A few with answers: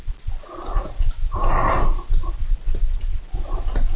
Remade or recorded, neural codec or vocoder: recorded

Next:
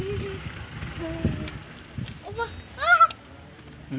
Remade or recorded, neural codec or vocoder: recorded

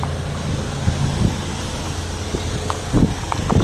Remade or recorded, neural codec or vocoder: recorded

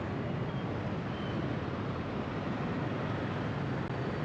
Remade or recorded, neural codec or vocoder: recorded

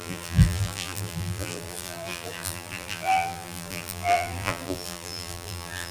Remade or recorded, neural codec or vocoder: remade, vocoder, BigVGAN v2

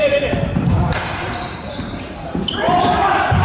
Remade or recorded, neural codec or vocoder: remade, vocoder, BigVGAN v2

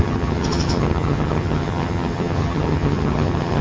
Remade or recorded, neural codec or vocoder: remade, vocoder, HiFi-GAN